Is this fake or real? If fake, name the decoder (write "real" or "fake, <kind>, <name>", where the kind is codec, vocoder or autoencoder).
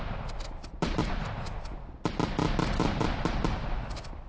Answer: real